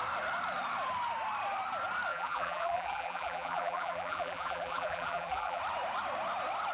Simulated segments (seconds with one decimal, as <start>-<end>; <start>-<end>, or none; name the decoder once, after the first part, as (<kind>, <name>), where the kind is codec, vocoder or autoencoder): 2.1-5.6 (vocoder, BigVGAN v2)